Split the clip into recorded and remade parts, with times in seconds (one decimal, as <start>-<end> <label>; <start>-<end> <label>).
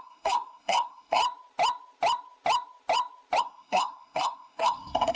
0.0-1.2 remade; 1.2-3.4 recorded; 3.4-5.2 remade